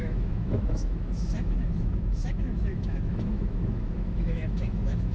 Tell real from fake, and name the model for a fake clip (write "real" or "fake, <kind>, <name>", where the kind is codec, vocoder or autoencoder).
fake, autoencoder, DAC-VAE